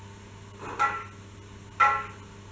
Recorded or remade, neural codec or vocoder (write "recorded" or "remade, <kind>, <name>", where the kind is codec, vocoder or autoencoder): recorded